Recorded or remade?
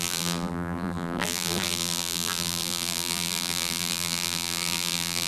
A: remade